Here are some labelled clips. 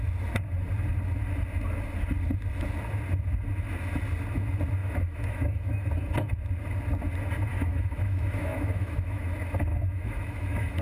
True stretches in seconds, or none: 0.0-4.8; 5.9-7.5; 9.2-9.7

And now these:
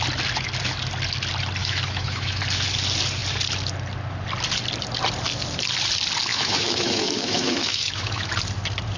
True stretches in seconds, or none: 0.0-1.6; 2.4-6.3; 8.3-9.0

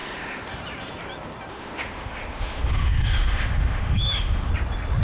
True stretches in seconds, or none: 0.5-1.5; 4.5-5.0

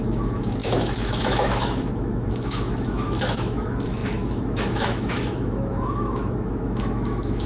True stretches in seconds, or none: none